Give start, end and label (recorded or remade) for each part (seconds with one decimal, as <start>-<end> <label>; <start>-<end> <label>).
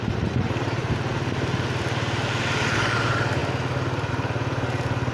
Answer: 0.0-0.8 remade; 0.8-2.8 recorded; 2.8-3.4 remade; 3.4-4.1 recorded; 4.1-5.1 remade